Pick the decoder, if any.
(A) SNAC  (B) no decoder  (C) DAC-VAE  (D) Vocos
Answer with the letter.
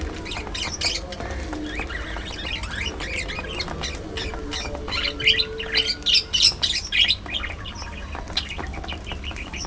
B